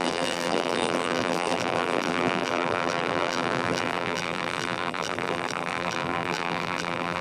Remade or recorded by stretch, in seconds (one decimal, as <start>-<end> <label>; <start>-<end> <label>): 0.0-7.2 remade